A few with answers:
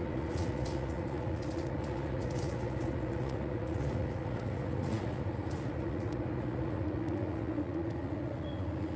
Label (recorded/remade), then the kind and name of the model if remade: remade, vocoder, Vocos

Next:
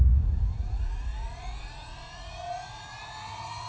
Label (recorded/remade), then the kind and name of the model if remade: remade, vocoder, Vocos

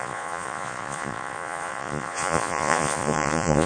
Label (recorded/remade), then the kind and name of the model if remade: remade, vocoder, Vocos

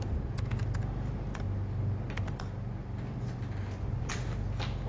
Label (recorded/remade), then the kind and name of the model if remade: recorded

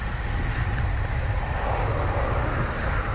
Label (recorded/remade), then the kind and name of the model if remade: recorded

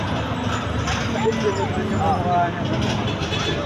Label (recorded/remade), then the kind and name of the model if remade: recorded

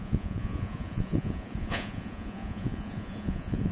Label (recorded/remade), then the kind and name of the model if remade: remade, vocoder, Vocos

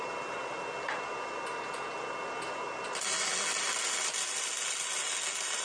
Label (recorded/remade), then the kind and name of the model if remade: recorded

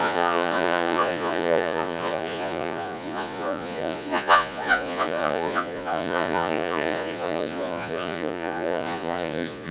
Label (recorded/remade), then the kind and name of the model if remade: remade, vocoder, Vocos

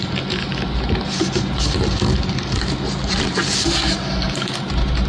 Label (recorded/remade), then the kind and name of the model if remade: recorded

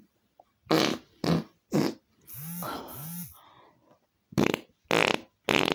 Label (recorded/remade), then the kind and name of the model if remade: recorded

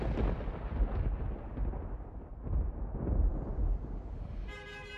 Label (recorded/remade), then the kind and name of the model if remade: recorded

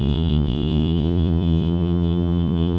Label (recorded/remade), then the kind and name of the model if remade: remade, vocoder, Vocos